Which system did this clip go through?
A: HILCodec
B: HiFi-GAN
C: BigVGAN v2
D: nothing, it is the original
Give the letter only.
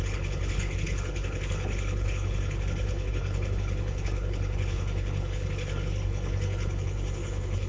A